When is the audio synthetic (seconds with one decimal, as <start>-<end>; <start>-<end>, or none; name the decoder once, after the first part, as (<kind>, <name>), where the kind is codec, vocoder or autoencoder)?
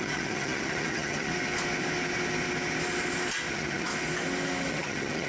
0.0-1.3 (vocoder, HiFi-GAN); 3.5-3.9; 4.7-5.3